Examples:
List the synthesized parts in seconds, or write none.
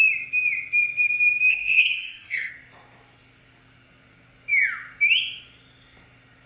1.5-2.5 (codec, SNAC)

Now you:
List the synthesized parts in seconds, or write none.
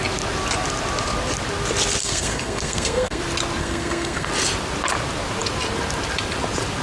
2.0-3.2 (codec, SNAC); 3.6-4.3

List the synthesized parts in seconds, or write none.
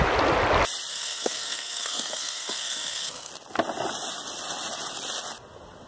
0.9-3.3 (codec, SNAC)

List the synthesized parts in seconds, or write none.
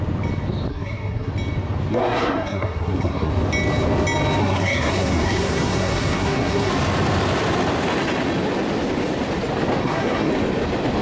0.7-1.3 (codec, SNAC); 1.9-3.3; 4.4-6.7; 9.8-10.3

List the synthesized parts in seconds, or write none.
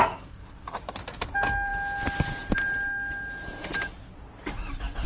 none